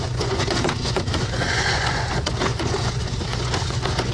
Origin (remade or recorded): remade